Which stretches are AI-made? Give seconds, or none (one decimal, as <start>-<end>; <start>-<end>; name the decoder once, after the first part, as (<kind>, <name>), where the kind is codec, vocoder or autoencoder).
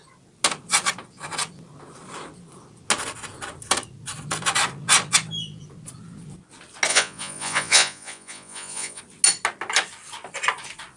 6.9-9.0 (vocoder, Vocos)